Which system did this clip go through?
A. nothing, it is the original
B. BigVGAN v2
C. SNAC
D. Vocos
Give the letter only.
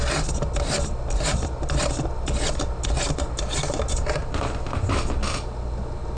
A